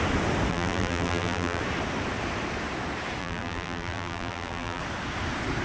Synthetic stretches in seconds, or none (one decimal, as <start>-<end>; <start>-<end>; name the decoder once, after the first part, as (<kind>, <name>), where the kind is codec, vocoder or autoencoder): 0.5-1.6 (vocoder, BigVGAN v2); 3.2-4.8